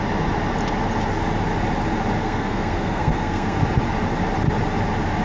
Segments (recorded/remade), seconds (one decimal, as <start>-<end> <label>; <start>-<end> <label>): 0.0-2.2 recorded; 2.2-3.6 remade; 3.6-5.2 recorded

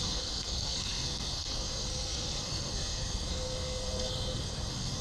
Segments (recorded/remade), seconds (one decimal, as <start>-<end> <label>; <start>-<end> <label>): 0.0-5.0 remade

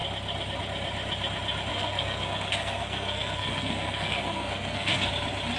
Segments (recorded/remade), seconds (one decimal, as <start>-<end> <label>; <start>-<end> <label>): 0.0-1.7 recorded; 1.7-5.1 remade; 5.1-5.6 recorded

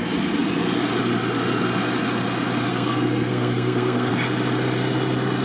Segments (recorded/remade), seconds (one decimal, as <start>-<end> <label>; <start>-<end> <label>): 0.0-2.7 recorded; 2.7-4.1 remade; 4.1-5.4 recorded

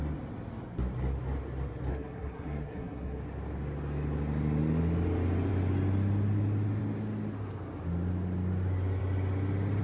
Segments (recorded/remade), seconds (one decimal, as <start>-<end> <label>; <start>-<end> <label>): 0.0-1.9 recorded; 1.9-3.2 remade; 3.2-9.8 recorded

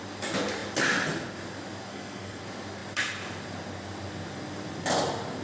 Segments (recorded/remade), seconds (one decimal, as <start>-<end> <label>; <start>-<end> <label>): 0.0-1.9 recorded; 1.9-2.4 remade; 2.4-5.4 recorded